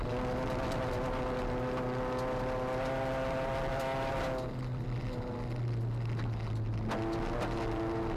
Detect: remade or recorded recorded